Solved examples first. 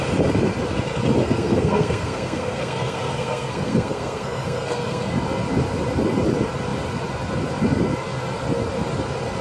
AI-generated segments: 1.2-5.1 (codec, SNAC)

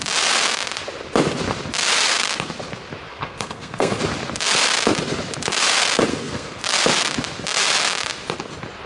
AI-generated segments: 3.1-4.0 (codec, SNAC); 6.1-6.6

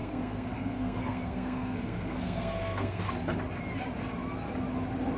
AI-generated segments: 0.0-3.1 (codec, SNAC)

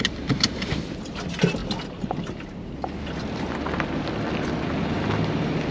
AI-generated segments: none

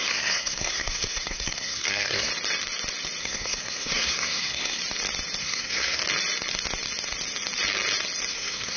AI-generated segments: 0.0-2.3 (codec, SNAC); 3.2-4.8; 5.4-6.0; 8.3-8.8